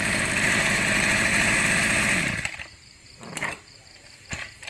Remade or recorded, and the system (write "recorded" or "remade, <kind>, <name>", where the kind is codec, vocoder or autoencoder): remade, vocoder, BigVGAN v2